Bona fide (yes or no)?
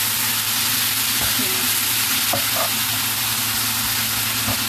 yes